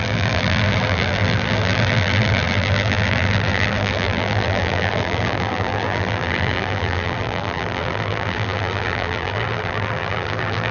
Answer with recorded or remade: remade